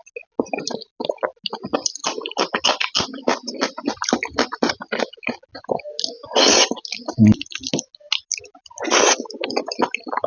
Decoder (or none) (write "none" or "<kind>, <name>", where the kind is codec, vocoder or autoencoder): none